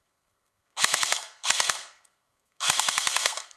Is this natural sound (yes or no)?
no